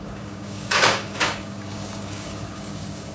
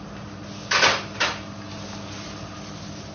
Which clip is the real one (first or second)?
second